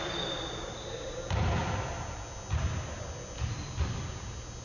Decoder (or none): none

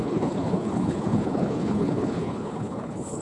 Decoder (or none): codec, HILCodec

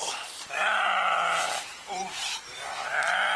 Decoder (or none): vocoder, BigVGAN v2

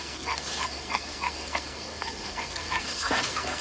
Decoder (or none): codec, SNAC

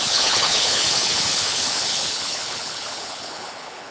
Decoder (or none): codec, HILCodec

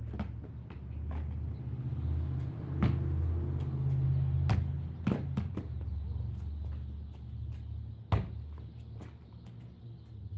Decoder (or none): none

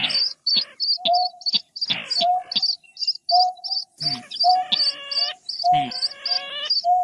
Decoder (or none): none